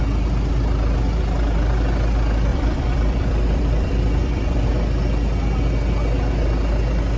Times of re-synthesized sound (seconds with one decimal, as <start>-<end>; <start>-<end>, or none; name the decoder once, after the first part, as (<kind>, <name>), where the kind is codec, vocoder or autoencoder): 2.5-4.7 (vocoder, BigVGAN v2)